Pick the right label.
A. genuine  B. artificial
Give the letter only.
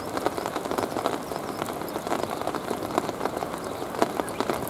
A